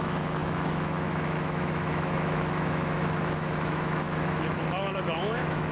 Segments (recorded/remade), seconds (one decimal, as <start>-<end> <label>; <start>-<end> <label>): 0.0-5.7 remade